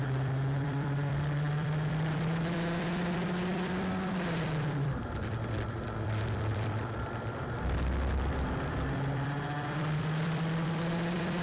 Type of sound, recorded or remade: remade